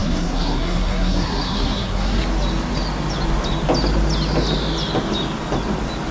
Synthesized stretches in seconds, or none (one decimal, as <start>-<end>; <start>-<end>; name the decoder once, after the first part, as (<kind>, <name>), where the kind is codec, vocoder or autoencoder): 0.0-2.2 (codec, SNAC)